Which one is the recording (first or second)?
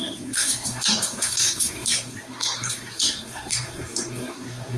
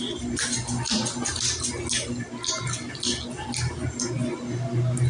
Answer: second